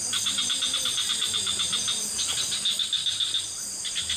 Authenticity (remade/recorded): recorded